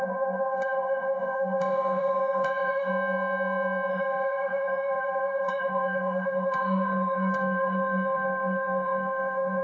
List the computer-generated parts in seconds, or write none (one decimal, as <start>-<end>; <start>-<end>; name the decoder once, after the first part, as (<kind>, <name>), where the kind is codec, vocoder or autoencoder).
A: 0.0-2.9 (autoencoder, DAC-VAE); 3.9-9.6